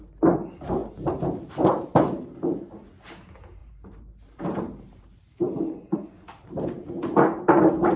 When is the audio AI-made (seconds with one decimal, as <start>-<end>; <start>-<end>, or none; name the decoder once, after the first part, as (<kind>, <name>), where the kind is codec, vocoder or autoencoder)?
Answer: 3.6-6.9 (vocoder, BigVGAN v2)